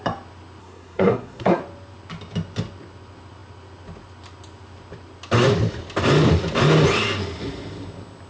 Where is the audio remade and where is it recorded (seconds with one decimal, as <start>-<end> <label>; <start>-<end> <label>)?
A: 0.0-0.6 recorded; 0.6-1.6 remade; 1.6-8.3 recorded

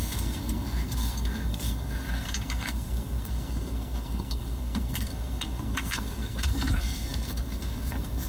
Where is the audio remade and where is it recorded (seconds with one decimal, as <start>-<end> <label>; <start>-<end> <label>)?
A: 0.0-8.3 remade

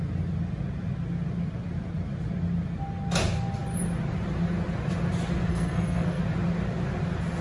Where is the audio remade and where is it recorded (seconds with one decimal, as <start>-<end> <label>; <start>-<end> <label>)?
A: 0.0-5.5 recorded; 5.5-6.2 remade; 6.2-7.4 recorded